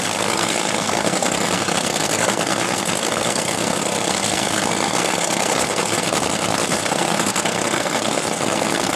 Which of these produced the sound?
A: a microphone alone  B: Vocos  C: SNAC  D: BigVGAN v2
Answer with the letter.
C